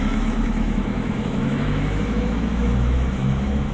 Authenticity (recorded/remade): remade